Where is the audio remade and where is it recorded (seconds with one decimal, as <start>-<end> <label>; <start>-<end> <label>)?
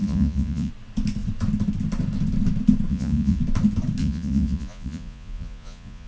0.0-0.7 remade; 0.7-2.9 recorded; 2.9-3.4 remade; 3.4-4.0 recorded; 4.0-6.1 remade